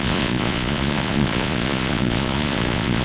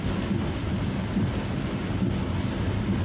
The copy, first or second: first